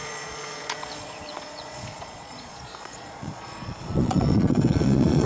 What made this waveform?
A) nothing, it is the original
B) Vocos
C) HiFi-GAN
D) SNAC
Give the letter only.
B